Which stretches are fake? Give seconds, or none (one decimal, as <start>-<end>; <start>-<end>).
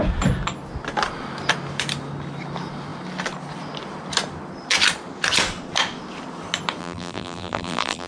6.8-8.1